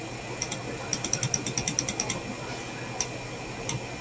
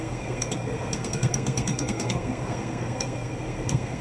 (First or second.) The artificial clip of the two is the second